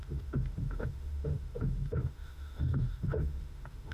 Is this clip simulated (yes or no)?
yes